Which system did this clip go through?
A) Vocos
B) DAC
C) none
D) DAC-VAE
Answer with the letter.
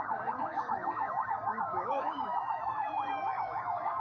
B